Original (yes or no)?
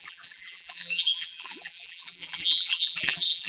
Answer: no